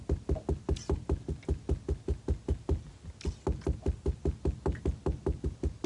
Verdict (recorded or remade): recorded